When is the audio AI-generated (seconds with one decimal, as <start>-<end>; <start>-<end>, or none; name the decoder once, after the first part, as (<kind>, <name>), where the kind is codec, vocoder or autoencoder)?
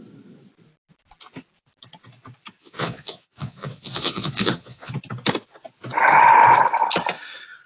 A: 2.6-4.9 (vocoder, Vocos)